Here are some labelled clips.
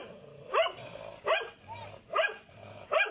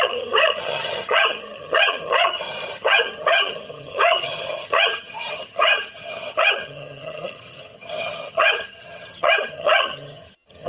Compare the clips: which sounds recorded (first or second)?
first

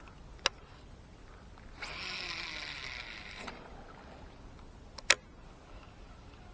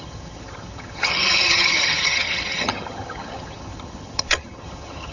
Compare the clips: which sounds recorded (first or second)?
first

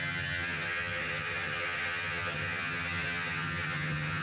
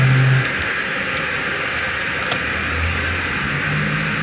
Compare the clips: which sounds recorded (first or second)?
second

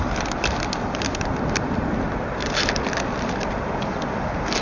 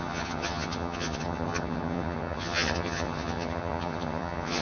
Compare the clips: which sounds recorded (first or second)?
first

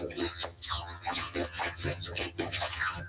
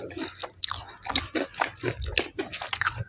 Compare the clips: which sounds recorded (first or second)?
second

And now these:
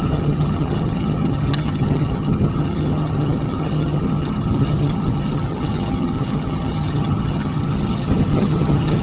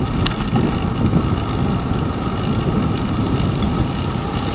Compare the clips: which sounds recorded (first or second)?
second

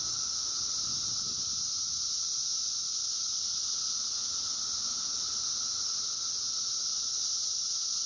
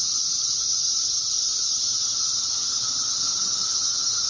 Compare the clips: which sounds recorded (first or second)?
first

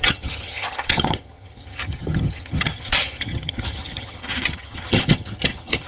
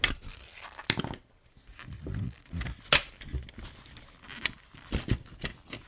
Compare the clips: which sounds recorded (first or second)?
second